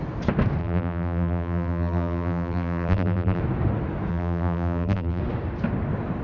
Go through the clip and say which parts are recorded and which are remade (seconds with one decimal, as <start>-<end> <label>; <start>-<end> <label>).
0.0-0.6 recorded; 0.6-3.4 remade; 3.4-4.1 recorded; 4.1-5.2 remade; 5.2-6.2 recorded